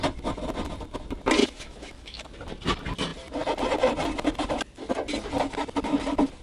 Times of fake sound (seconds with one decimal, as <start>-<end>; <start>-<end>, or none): 1.4-2.3